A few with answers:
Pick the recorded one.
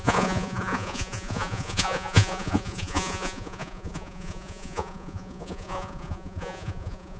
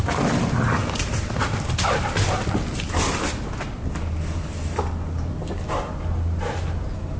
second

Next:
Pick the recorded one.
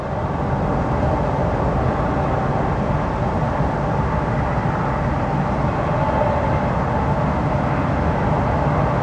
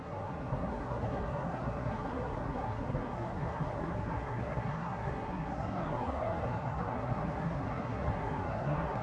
first